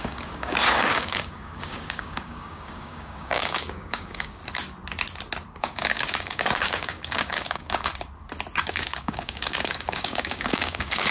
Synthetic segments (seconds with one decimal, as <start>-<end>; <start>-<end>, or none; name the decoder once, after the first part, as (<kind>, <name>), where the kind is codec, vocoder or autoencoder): 0.0-4.4 (codec, DAC); 5.6-7.9; 8.6-11.1